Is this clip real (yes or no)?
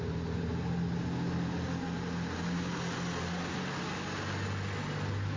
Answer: yes